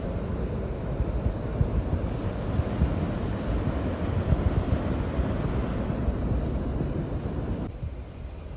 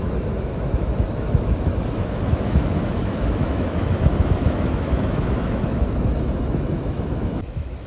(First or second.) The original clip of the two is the first